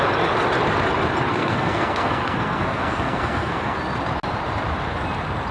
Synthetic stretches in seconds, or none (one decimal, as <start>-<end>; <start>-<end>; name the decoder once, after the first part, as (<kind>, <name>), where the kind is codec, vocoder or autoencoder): 1.3-3.8 (codec, SNAC)